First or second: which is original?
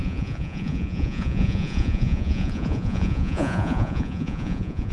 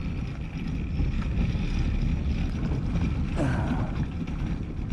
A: second